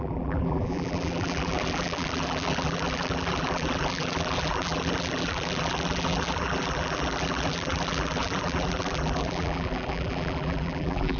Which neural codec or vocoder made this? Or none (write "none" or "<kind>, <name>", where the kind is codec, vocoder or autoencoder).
vocoder, BigVGAN v2